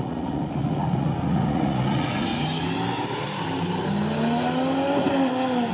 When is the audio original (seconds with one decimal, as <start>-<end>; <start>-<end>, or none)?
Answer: 2.3-5.7